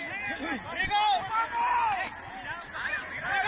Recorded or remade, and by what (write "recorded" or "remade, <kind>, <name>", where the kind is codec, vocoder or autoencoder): recorded